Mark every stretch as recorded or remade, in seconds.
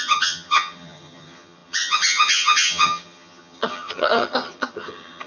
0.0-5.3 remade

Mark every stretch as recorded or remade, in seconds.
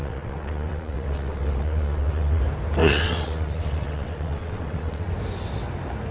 0.0-2.4 remade; 2.4-2.8 recorded; 2.8-5.1 remade; 5.1-6.1 recorded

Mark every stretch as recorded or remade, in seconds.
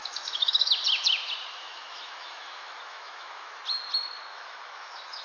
0.0-0.7 remade; 0.7-1.5 recorded; 1.5-3.6 remade; 3.6-4.3 recorded; 4.3-5.2 remade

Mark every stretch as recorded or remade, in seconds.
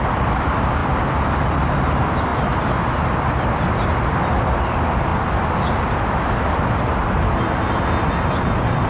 0.0-8.9 recorded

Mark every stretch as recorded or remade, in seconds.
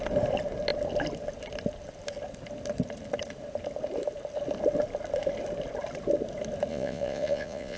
0.0-6.7 recorded; 6.7-7.8 remade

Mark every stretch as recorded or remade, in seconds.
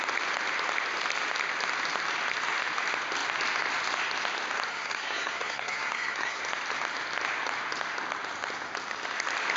0.0-4.7 recorded; 4.7-6.4 remade; 6.4-9.6 recorded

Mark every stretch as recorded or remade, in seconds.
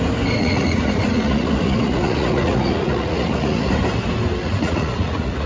0.0-0.4 recorded; 0.4-3.7 remade; 3.7-4.4 recorded; 4.4-5.5 remade